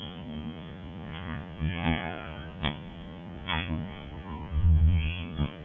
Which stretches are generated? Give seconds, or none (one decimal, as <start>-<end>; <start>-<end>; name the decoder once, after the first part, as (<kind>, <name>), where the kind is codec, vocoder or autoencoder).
0.0-5.6 (vocoder, Vocos)